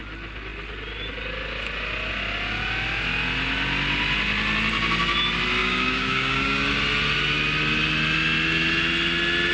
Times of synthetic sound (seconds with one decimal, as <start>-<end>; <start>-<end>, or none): 5.6-6.7